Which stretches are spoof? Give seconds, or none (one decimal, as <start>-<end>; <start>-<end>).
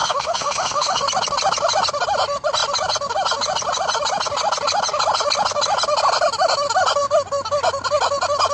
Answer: 0.0-1.0